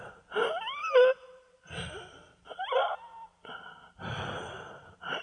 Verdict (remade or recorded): remade